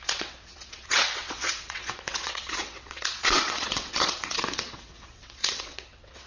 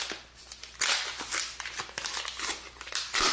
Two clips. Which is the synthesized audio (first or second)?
first